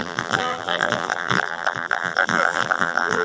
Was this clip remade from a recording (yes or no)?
yes